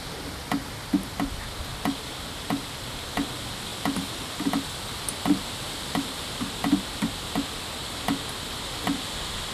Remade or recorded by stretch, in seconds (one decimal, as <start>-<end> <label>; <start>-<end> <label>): 0.0-9.5 recorded